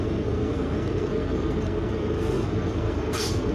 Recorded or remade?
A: remade